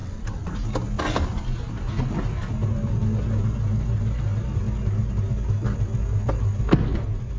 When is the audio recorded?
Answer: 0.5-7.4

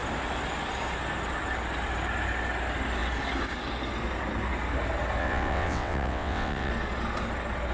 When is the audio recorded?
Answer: 0.0-5.2; 6.7-7.7